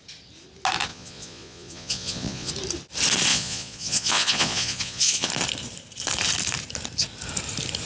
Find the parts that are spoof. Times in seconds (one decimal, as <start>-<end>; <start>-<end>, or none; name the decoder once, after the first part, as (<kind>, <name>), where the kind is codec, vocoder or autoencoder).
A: 0.9-2.5 (vocoder, Vocos); 3.3-5.3